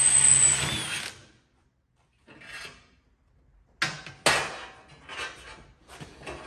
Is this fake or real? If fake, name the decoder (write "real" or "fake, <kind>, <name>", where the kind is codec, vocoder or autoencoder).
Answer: real